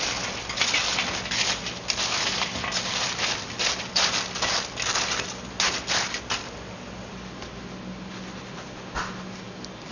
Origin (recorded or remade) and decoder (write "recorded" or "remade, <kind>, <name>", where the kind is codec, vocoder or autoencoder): recorded